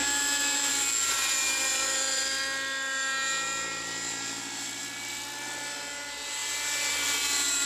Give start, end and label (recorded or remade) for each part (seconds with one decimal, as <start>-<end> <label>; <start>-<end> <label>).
0.0-1.7 recorded; 1.7-2.4 remade; 2.4-7.7 recorded